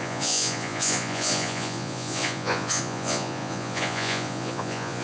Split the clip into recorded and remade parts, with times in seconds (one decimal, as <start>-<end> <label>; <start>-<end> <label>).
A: 0.0-5.0 remade